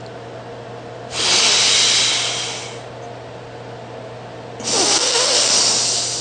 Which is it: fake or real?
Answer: real